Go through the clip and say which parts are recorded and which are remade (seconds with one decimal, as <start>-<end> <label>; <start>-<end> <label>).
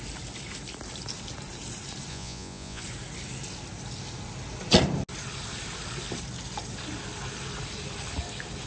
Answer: 0.0-2.1 recorded; 2.1-2.8 remade; 2.8-8.7 recorded